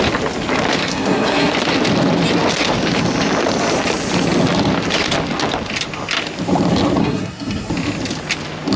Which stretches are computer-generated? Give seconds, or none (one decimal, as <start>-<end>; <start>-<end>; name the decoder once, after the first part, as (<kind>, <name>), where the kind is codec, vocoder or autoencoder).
0.9-1.5 (codec, SNAC); 7.0-7.7